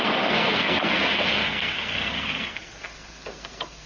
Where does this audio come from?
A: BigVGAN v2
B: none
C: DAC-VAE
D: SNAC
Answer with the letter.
D